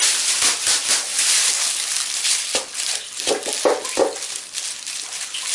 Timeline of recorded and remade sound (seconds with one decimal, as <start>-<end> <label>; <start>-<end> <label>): 0.0-5.5 recorded